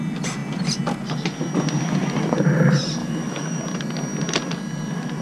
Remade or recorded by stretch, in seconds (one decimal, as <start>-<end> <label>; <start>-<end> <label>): 0.0-3.0 recorded; 3.0-3.6 remade; 3.6-5.2 recorded